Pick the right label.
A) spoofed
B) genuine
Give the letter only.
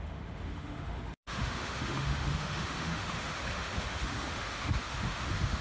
A